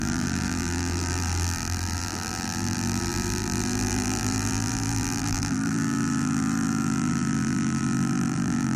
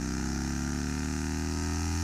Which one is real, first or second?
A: second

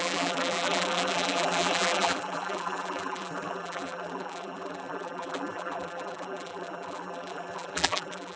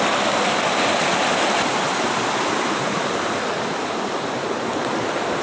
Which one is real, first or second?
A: second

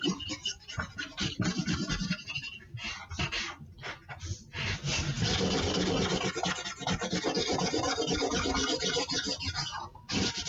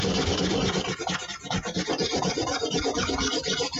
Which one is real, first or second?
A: first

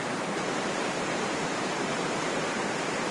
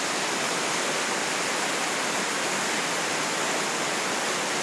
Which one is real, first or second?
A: second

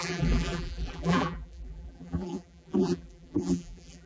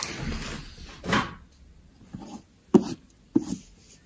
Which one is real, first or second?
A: second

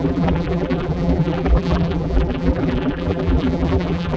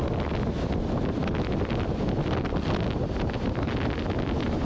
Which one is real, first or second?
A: second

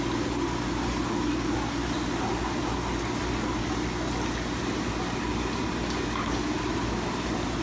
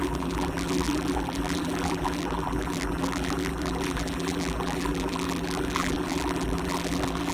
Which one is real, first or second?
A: first